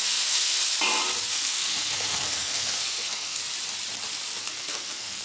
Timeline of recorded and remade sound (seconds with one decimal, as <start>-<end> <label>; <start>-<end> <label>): 0.0-0.6 remade; 0.6-1.3 recorded; 1.3-3.4 remade; 3.4-4.4 recorded; 4.4-5.2 remade